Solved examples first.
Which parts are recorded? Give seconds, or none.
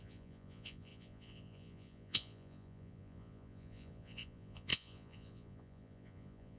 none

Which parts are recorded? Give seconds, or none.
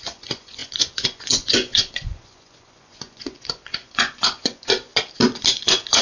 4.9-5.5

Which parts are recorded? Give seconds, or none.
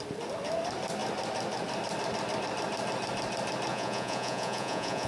0.0-3.7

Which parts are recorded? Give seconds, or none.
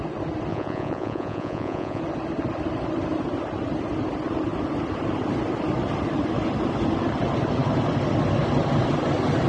0.0-0.5; 2.0-9.5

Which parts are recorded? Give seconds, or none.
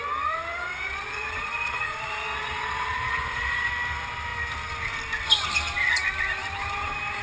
0.0-0.7; 3.7-7.2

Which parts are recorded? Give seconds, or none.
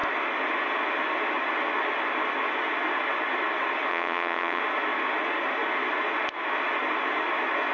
0.0-3.9; 4.6-7.7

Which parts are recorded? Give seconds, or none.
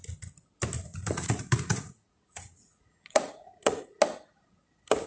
0.0-0.9; 4.0-5.1